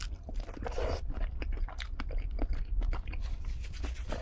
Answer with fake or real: real